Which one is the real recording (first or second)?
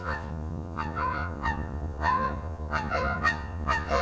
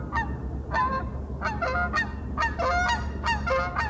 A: second